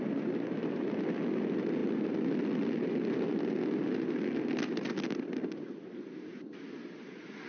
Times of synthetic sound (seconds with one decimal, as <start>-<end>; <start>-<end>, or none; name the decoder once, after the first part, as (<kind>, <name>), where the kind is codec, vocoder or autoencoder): none